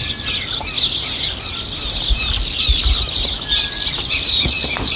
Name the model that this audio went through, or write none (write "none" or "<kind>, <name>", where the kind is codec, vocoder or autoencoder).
none